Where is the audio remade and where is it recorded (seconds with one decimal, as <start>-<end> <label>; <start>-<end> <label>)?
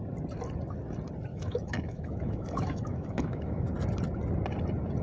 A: 0.0-1.3 recorded; 1.3-3.7 remade; 3.7-5.0 recorded